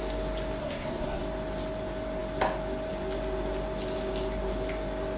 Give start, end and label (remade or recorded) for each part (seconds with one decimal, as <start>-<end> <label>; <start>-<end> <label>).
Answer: 0.0-0.6 recorded; 0.6-1.2 remade; 1.2-5.2 recorded